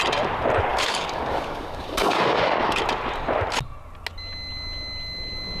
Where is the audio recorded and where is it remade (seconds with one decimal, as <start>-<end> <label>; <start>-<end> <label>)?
0.0-0.7 recorded; 0.7-2.8 remade; 2.8-5.6 recorded